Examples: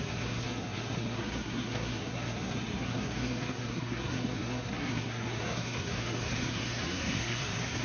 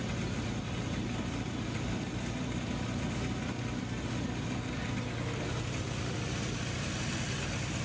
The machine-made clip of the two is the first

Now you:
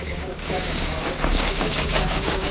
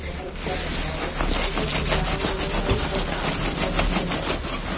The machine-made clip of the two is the first